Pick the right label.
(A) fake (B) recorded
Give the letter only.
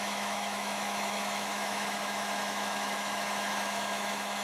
A